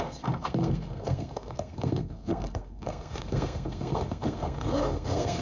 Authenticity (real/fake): fake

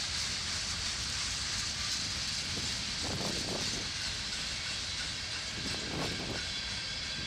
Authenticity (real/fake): real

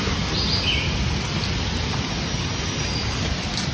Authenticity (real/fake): real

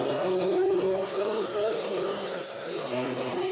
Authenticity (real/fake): fake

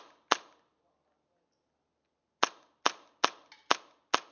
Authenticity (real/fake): real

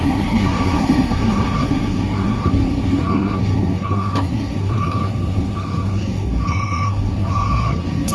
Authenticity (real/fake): fake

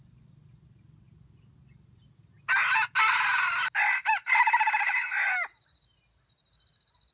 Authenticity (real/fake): real